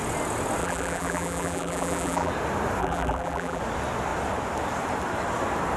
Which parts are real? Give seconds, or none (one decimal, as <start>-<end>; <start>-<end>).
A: 0.0-0.6; 2.3-2.8; 3.6-5.8